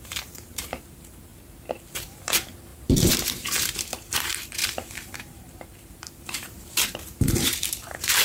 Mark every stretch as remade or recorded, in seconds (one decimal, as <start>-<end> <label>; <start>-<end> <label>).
0.0-1.3 remade; 1.3-2.0 recorded; 2.0-8.2 remade